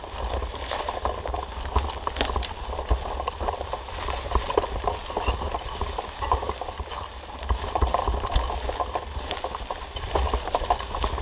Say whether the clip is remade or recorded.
recorded